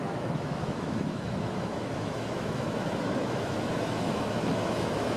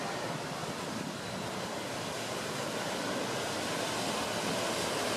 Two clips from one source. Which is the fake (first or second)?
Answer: first